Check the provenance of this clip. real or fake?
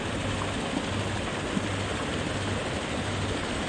real